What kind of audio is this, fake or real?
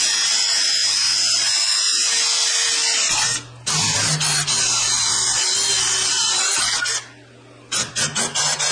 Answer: real